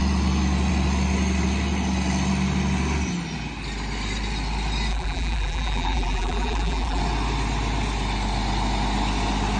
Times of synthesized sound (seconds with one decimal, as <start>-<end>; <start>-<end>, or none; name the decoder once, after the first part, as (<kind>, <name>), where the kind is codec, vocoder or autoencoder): 4.9-7.0 (vocoder, BigVGAN v2)